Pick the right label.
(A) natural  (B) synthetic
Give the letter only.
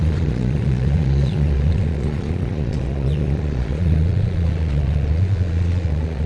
B